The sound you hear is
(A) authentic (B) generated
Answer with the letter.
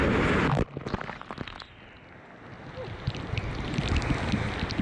A